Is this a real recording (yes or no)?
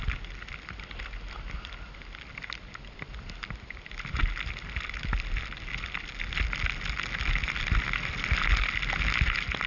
yes